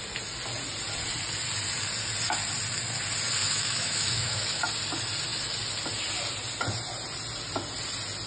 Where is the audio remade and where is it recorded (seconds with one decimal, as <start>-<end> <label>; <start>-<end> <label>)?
0.0-3.4 recorded; 3.4-4.6 remade; 4.6-8.3 recorded